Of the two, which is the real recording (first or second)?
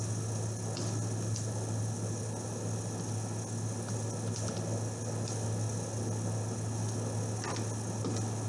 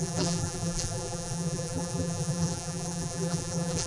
first